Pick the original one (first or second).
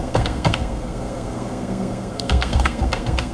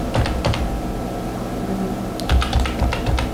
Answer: second